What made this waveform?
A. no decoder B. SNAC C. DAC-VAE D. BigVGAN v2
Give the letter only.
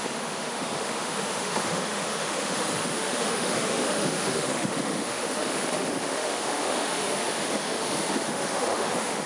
C